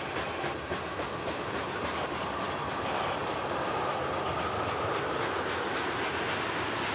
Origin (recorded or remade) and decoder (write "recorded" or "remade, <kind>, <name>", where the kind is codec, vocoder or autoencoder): recorded